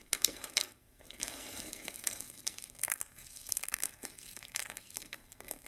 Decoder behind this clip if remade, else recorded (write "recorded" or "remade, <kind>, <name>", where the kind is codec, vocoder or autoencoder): remade, codec, SNAC